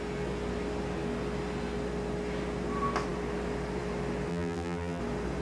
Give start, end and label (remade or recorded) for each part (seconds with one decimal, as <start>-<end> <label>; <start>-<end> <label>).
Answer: 0.0-4.3 recorded; 4.3-5.0 remade; 5.0-5.4 recorded